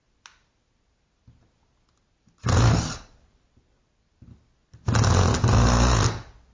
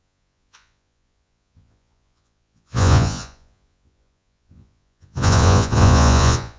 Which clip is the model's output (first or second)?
second